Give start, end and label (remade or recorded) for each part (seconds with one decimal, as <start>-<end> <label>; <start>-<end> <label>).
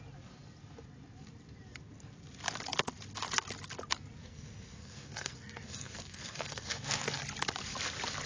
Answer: 0.0-4.2 recorded; 4.2-7.2 remade; 7.2-8.3 recorded